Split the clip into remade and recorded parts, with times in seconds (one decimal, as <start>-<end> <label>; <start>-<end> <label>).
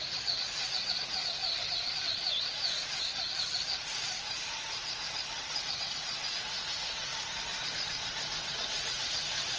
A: 0.0-1.2 remade; 1.2-6.0 recorded; 6.0-7.1 remade; 7.1-8.5 recorded; 8.5-9.6 remade